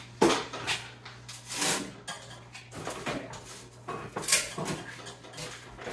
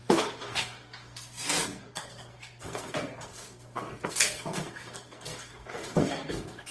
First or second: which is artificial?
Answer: second